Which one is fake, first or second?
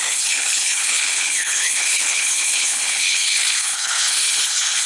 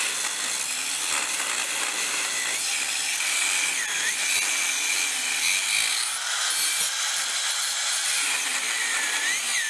first